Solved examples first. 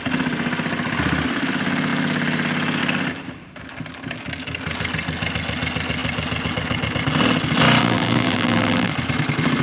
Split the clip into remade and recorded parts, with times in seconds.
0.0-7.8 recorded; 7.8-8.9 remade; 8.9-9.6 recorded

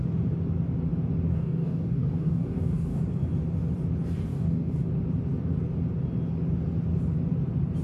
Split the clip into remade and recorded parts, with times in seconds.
0.0-1.3 recorded; 1.3-3.0 remade; 3.0-4.3 recorded; 4.3-4.9 remade; 4.9-7.8 recorded

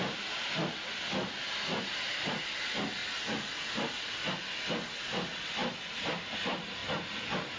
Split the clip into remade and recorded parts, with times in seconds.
0.0-7.6 recorded

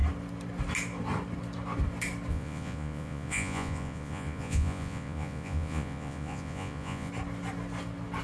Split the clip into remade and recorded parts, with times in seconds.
0.0-2.3 recorded; 2.3-7.1 remade; 7.1-8.2 recorded

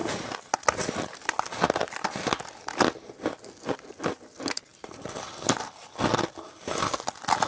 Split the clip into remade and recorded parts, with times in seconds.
0.0-7.5 recorded

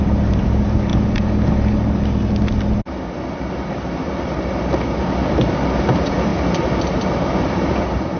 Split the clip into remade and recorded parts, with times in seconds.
0.0-0.9 remade; 0.9-5.8 recorded; 5.8-8.2 remade